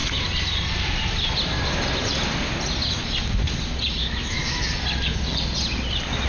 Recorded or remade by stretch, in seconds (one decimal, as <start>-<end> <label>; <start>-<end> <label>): 0.0-4.0 recorded; 4.0-4.6 remade; 4.6-6.3 recorded